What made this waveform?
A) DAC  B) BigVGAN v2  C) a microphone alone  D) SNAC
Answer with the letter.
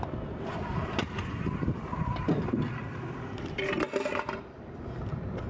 C